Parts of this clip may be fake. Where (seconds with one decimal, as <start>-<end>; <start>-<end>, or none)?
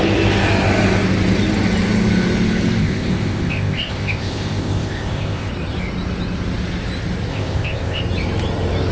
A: 2.8-5.5; 7.3-8.0